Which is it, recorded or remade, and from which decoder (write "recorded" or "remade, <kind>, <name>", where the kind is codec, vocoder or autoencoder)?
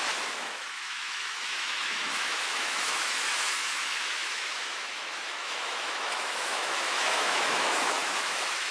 remade, autoencoder, DAC-VAE